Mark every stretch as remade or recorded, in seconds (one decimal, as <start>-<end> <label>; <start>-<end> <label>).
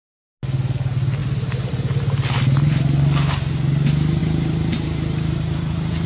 0.0-1.2 recorded; 1.2-1.7 remade; 1.7-4.2 recorded; 4.2-6.1 remade